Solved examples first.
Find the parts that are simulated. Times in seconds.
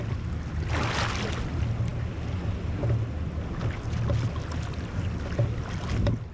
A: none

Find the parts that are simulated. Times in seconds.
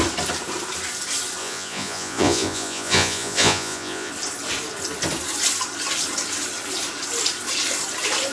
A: 1.4-4.1 (vocoder, Vocos)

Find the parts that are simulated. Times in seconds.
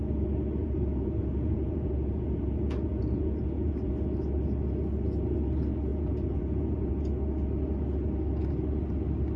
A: 0.6-3.9 (vocoder, Vocos); 5.9-6.9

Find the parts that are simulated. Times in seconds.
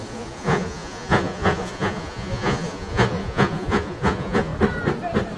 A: 0.0-4.5 (vocoder, Vocos)